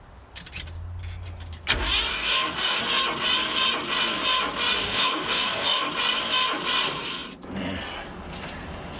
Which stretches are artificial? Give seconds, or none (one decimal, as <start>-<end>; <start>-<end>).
2.1-2.8; 4.8-5.9